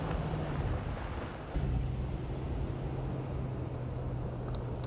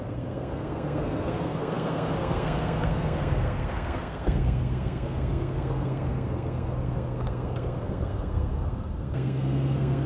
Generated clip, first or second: second